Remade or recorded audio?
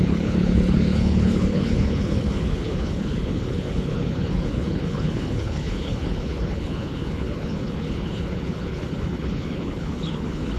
remade